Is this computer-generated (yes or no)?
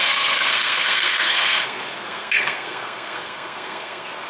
yes